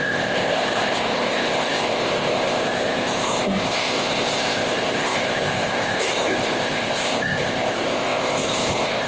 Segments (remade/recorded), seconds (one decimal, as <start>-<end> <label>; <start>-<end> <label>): 0.0-9.1 remade